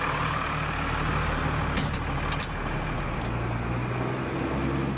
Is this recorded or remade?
recorded